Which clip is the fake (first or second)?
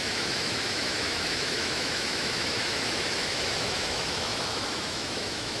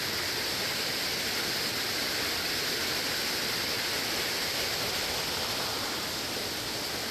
first